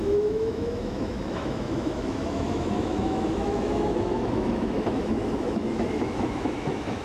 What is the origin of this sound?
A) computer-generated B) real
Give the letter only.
A